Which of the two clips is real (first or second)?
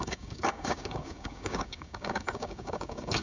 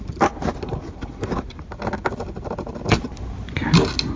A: second